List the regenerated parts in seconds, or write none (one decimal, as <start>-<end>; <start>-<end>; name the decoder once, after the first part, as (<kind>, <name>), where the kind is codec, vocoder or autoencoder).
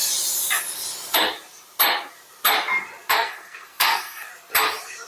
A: 3.1-4.3 (codec, SNAC)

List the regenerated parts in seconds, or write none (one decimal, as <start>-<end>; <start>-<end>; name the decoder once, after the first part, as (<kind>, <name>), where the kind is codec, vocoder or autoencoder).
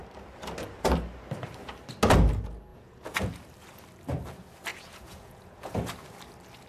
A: 2.7-3.3 (vocoder, Vocos); 4.7-5.9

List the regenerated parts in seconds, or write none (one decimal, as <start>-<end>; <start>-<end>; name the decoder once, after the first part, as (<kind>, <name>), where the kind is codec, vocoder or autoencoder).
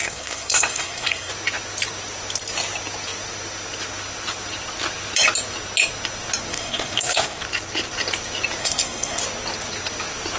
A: 0.0-1.3 (codec, SNAC); 6.5-7.4; 8.6-9.2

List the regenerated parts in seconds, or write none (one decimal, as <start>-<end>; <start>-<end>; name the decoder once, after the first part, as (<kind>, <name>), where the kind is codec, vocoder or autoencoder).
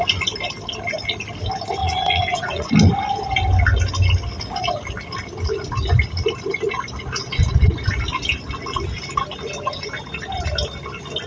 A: 1.8-2.7 (vocoder, Vocos)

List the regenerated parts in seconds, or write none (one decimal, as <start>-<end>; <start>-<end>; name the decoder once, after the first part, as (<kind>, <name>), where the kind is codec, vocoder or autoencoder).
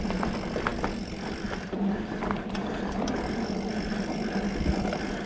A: 0.7-3.9 (vocoder, BigVGAN v2)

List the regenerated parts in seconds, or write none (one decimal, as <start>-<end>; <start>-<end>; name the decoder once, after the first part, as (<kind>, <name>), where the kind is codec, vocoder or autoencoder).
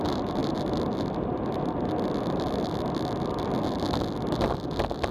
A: none